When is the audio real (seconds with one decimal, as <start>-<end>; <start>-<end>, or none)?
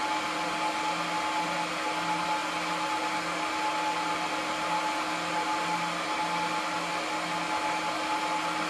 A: 0.0-8.7